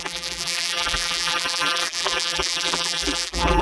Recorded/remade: remade